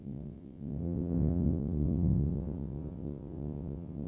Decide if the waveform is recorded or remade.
remade